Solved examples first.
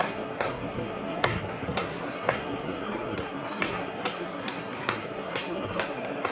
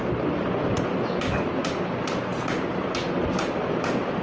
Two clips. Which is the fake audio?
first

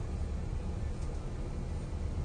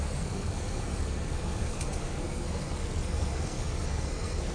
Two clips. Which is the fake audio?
second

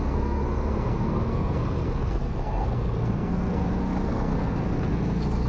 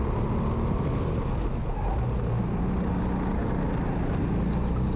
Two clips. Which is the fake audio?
first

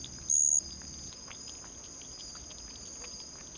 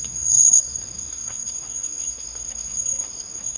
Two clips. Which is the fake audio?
second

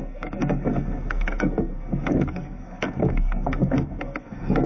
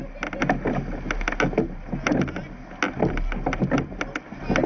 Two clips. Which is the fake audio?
first